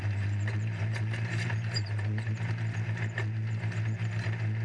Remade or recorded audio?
recorded